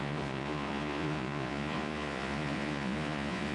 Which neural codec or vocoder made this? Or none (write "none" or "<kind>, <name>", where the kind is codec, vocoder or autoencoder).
vocoder, Vocos